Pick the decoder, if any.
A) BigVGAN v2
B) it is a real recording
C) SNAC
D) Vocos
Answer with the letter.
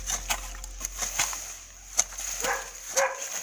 B